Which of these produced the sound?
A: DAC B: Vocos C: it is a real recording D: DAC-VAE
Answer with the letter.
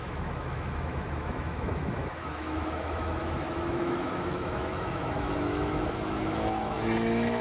D